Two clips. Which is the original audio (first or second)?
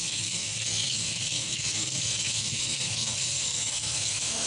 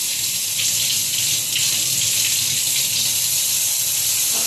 second